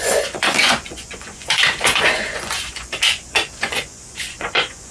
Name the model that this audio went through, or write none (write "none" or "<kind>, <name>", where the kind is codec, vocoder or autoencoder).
vocoder, Vocos